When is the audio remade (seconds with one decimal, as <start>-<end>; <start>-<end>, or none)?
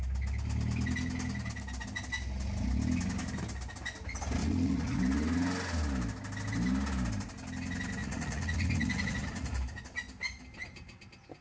4.4-5.0; 8.0-9.5